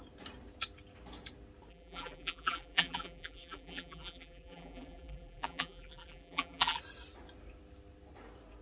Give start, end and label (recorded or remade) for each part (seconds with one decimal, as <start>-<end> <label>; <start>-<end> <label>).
0.0-1.7 recorded; 1.7-6.8 remade; 6.8-8.6 recorded